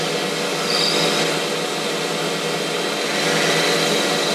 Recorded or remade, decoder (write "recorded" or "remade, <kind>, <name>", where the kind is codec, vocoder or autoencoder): recorded